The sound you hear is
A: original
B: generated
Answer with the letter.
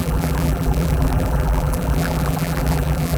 B